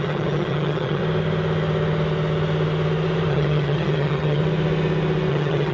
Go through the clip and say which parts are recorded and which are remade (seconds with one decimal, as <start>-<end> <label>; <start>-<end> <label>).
0.0-1.0 remade; 1.0-3.3 recorded; 3.3-4.4 remade; 4.4-5.3 recorded; 5.3-5.7 remade